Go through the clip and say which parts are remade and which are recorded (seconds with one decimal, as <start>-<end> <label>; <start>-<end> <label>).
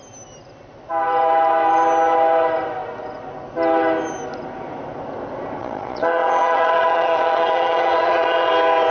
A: 0.0-5.6 recorded; 5.6-8.5 remade; 8.5-8.9 recorded